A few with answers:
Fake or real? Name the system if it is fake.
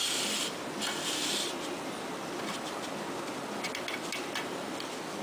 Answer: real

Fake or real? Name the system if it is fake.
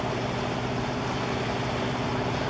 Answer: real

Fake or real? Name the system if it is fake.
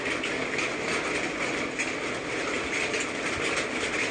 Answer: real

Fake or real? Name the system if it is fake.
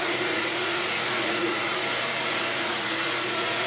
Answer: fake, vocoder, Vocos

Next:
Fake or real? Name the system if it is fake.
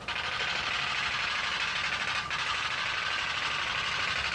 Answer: real